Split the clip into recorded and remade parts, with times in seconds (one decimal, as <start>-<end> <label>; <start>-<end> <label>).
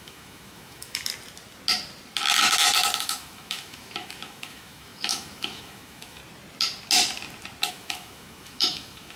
0.0-1.1 remade; 1.1-3.0 recorded; 3.0-6.2 remade; 6.2-7.7 recorded; 7.7-9.2 remade